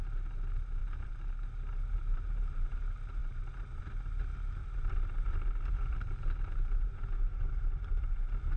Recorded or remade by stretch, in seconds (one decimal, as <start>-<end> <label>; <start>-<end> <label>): 0.0-0.8 recorded; 0.8-2.7 remade; 2.7-3.2 recorded; 3.2-3.8 remade; 3.8-4.6 recorded; 4.6-8.1 remade; 8.1-8.6 recorded